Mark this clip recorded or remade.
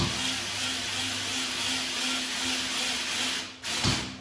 recorded